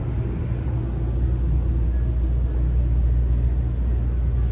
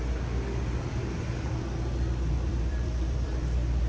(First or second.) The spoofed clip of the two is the second